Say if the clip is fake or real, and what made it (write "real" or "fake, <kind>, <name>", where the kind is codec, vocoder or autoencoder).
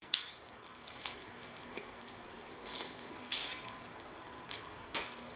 fake, codec, SNAC